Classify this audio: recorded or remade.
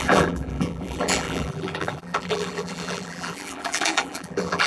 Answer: remade